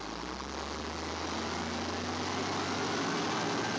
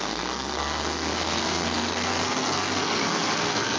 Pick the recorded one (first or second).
first